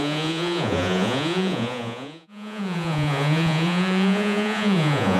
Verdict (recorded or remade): remade